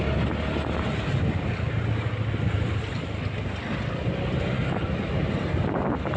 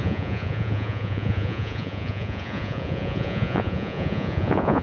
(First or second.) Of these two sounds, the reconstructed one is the second